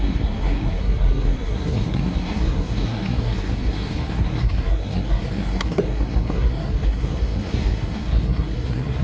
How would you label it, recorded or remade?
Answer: remade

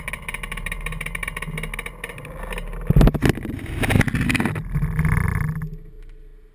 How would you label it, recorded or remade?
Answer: recorded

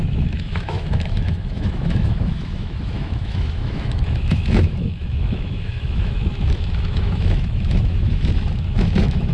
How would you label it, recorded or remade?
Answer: remade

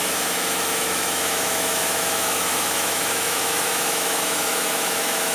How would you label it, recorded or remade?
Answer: remade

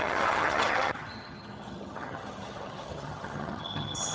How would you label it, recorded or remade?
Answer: remade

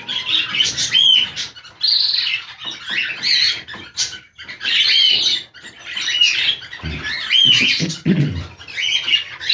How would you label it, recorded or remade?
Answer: recorded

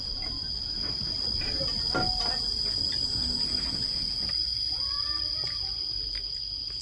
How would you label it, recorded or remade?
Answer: recorded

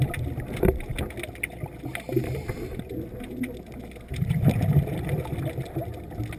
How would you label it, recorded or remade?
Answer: recorded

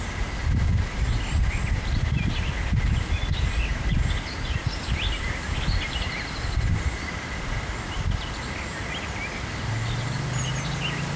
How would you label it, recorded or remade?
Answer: recorded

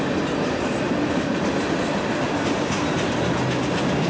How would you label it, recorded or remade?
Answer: recorded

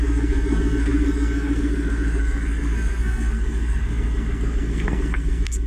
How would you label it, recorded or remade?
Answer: remade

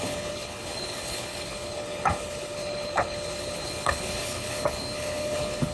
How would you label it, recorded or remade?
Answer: remade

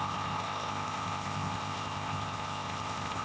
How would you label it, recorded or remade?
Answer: remade